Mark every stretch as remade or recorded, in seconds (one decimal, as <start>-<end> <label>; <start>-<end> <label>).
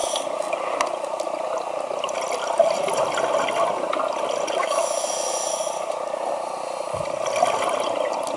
0.0-4.6 recorded; 4.6-5.1 remade; 5.1-8.4 recorded